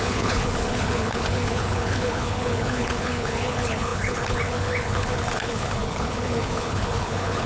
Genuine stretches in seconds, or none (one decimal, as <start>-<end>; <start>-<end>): none